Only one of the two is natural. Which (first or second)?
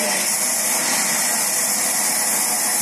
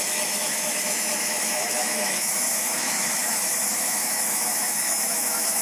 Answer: first